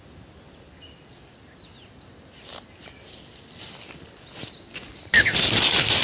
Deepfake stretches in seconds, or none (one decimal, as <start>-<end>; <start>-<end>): none